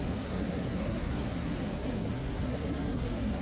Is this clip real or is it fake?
fake